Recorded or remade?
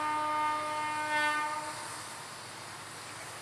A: recorded